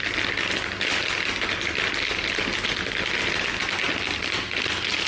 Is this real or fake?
real